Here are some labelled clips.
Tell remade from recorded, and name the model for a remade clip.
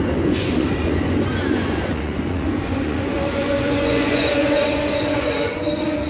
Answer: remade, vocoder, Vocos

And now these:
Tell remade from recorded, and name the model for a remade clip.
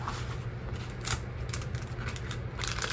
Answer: recorded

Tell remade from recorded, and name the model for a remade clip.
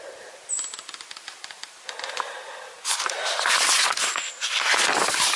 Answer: recorded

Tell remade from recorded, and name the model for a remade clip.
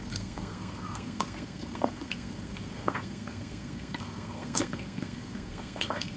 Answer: remade, codec, SNAC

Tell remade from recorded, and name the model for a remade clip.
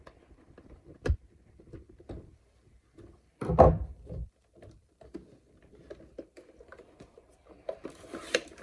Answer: remade, vocoder, BigVGAN v2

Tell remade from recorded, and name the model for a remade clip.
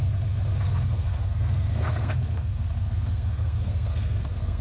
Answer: remade, codec, SNAC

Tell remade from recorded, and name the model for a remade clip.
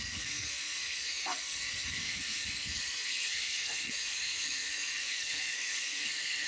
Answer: remade, codec, SNAC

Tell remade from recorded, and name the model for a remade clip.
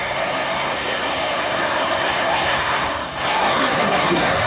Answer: remade, codec, SNAC